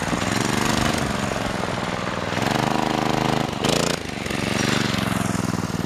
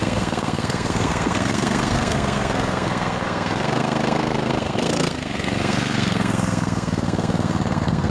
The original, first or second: first